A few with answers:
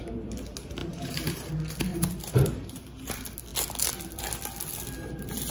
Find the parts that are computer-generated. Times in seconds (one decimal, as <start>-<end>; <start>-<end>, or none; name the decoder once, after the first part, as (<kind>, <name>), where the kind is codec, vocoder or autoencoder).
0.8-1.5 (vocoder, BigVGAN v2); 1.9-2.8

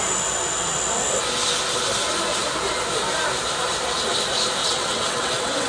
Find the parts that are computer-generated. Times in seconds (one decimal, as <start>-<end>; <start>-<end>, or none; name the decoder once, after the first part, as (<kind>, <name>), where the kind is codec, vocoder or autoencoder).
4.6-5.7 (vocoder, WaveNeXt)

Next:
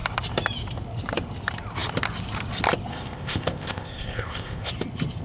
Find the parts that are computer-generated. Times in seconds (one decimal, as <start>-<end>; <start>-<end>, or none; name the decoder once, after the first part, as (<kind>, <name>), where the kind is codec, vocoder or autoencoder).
2.9-4.7 (codec, ZipCodec)